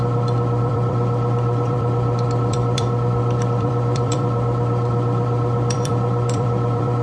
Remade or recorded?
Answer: remade